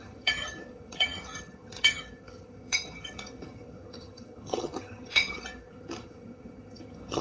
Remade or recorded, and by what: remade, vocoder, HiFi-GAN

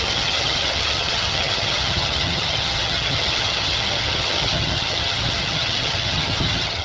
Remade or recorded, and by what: remade, vocoder, HiFi-GAN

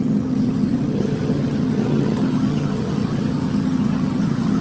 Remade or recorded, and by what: remade, vocoder, HiFi-GAN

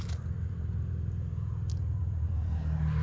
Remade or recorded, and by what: recorded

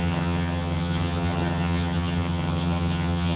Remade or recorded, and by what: remade, vocoder, HiFi-GAN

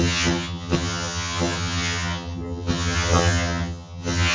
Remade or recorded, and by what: remade, vocoder, HiFi-GAN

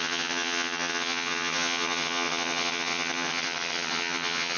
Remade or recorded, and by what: remade, vocoder, HiFi-GAN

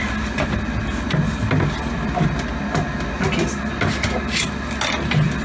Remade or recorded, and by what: recorded